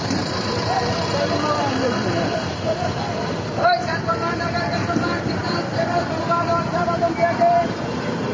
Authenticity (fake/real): fake